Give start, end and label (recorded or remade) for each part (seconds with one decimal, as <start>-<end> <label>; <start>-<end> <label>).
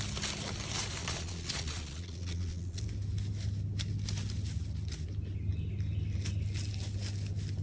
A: 0.0-1.0 recorded; 1.0-2.8 remade; 2.8-7.6 recorded